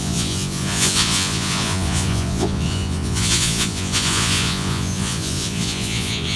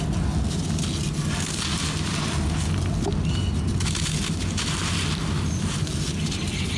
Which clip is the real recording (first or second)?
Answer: second